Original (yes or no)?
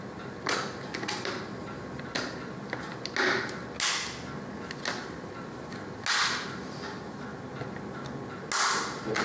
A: yes